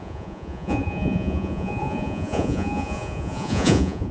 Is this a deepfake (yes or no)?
yes